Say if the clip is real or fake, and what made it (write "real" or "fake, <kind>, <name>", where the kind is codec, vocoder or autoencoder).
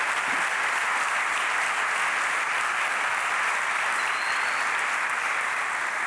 real